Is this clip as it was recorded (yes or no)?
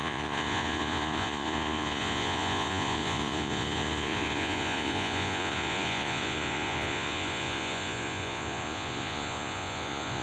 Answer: no